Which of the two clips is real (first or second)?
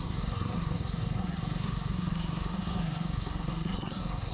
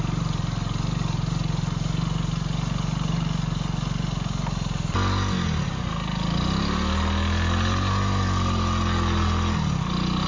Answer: second